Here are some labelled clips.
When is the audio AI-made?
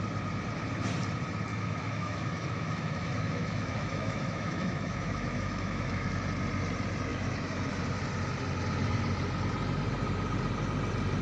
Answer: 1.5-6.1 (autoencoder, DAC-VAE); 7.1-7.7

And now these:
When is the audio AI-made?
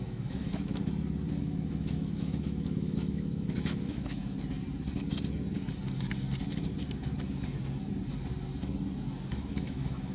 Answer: 0.0-0.8 (autoencoder, DAC-VAE); 1.4-4.2; 9.3-10.1